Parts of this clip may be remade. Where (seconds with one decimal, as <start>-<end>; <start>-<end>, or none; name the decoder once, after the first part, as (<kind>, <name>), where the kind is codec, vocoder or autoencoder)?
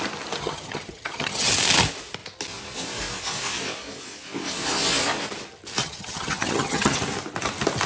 0.4-1.5 (vocoder, HiFi-GAN); 5.8-7.0